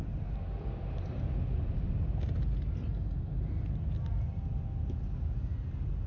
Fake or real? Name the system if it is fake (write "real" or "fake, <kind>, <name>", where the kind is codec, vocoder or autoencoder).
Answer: real